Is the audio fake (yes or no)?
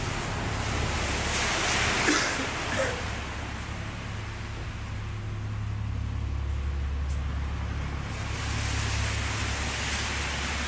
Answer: no